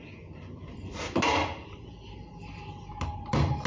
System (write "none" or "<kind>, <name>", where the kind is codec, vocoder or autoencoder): none